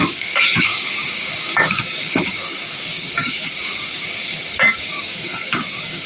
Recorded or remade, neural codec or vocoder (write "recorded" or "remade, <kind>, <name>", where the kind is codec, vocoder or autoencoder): remade, codec, DAC